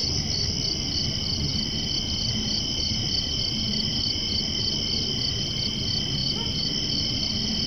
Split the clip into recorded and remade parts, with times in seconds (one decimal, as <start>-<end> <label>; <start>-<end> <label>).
0.0-7.7 recorded